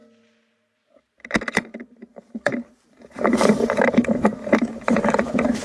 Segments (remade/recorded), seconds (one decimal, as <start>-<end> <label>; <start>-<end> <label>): 0.0-1.5 recorded; 1.5-5.6 remade